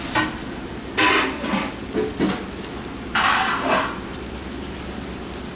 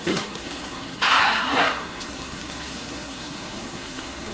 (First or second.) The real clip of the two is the first